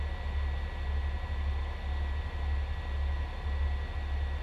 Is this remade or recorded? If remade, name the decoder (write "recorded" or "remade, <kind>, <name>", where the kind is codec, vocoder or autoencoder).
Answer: recorded